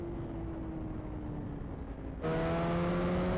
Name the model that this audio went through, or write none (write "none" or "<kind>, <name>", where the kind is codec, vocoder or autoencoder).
none